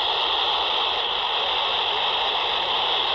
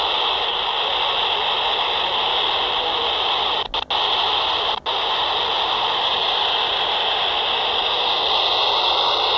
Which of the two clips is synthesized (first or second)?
first